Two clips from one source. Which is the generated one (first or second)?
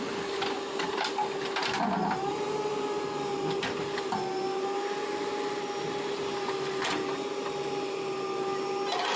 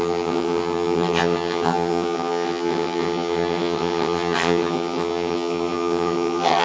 second